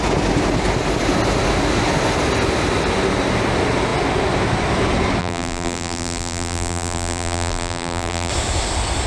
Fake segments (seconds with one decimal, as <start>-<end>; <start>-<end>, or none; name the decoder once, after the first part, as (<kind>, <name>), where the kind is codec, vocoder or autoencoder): 5.2-8.3 (vocoder, BigVGAN v2)